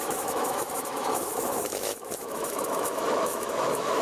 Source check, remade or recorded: remade